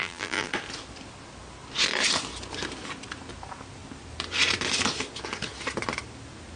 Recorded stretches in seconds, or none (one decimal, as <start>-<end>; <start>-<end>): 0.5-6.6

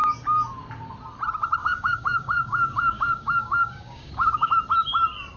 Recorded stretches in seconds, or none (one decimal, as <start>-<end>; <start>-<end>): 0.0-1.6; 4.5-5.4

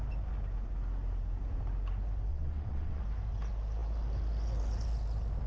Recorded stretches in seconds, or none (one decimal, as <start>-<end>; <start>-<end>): 0.0-2.3; 3.0-5.5

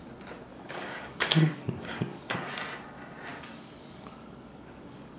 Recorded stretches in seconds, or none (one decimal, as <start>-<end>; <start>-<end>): 0.0-0.5; 2.5-3.3

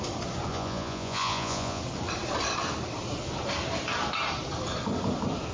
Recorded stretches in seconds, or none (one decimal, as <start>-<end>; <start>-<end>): 0.0-0.5; 1.8-5.5

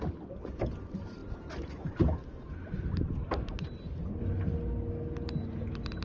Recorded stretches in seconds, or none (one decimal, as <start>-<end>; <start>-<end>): 0.0-6.0

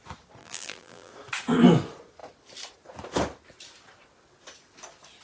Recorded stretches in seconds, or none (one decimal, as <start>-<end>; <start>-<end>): 0.0-0.4; 1.1-5.2